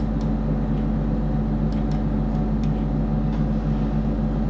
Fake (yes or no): no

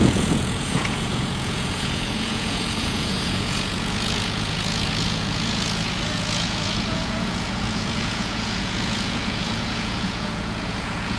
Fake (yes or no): yes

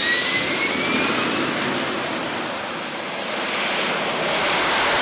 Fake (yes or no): no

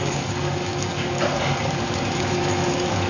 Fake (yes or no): yes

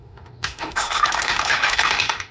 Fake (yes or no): yes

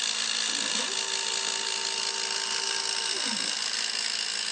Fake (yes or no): no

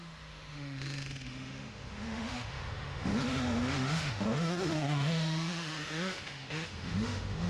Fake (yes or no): yes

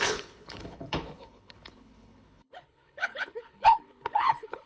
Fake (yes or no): yes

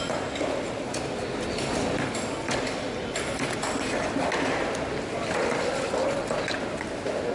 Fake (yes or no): no